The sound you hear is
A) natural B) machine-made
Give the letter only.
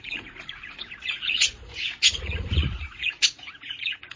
B